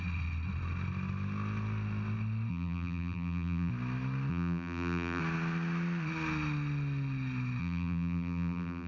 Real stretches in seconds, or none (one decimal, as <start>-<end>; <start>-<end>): 0.0-2.5; 3.7-4.3; 5.2-7.6